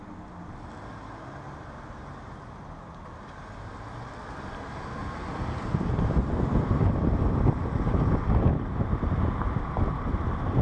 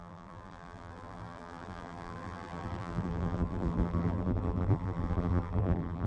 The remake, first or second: second